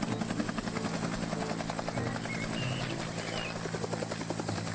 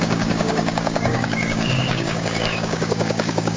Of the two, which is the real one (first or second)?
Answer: first